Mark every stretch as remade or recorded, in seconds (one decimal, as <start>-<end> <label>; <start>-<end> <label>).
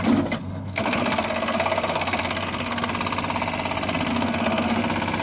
0.0-0.4 recorded; 0.4-2.9 remade; 2.9-4.1 recorded; 4.1-4.8 remade; 4.8-5.2 recorded